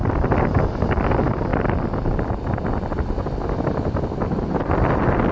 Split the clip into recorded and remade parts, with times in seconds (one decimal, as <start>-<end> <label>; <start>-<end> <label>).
0.0-5.3 recorded